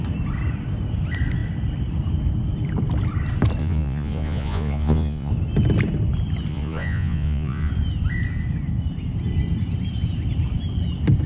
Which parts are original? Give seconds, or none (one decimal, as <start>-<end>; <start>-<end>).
0.0-3.6; 5.3-6.5; 7.7-11.3